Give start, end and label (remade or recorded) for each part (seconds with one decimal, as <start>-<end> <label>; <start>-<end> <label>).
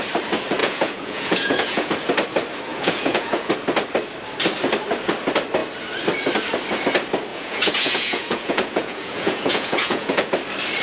0.0-0.6 recorded; 0.6-1.9 remade; 1.9-2.7 recorded; 2.7-3.5 remade; 3.5-7.3 recorded; 7.3-10.3 remade; 10.3-10.8 recorded